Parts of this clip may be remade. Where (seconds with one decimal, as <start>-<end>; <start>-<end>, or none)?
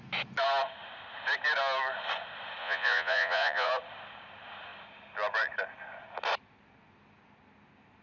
2.6-3.7